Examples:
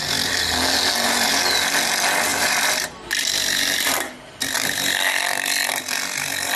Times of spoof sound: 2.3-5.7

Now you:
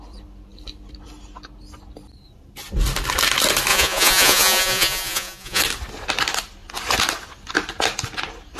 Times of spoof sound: 3.7-5.6

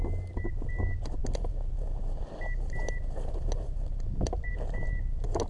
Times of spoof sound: none

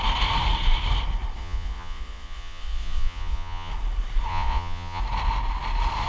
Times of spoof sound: 1.4-3.7; 4.3-5.0

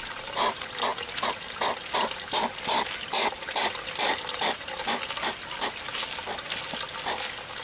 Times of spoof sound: none

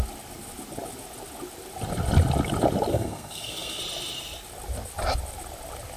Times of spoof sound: 2.9-3.8